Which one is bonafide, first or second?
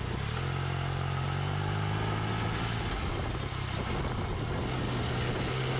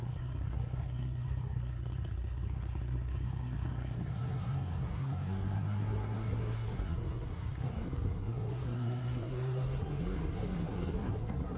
first